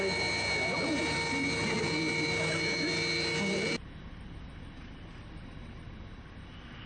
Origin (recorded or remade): recorded